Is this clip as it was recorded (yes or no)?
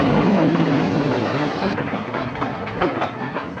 no